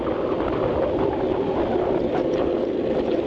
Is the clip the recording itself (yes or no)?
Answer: yes